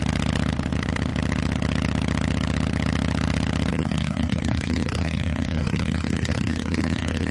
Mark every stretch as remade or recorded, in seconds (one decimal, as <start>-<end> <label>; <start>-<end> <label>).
0.0-3.7 recorded; 3.7-7.3 remade